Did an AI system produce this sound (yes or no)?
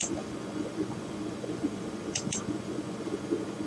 yes